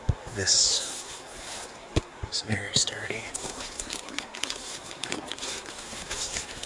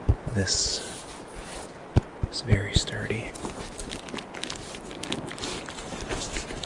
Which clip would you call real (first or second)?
second